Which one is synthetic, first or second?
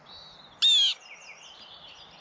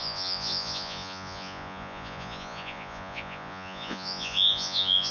second